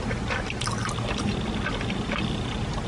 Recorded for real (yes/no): yes